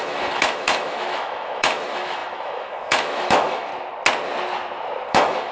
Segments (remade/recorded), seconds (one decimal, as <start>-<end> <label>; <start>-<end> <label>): 0.0-3.7 remade; 3.7-5.1 recorded; 5.1-5.5 remade